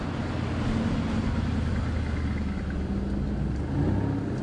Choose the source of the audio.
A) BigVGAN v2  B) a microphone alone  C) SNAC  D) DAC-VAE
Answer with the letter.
B